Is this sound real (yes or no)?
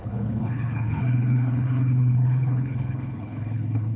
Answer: no